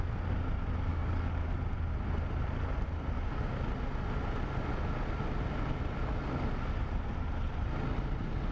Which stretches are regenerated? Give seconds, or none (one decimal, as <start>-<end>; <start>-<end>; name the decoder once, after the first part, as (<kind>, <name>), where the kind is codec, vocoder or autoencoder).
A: 0.9-1.5 (codec, DAC)